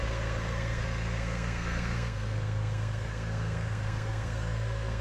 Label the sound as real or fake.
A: fake